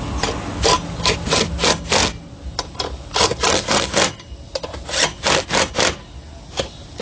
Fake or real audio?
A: real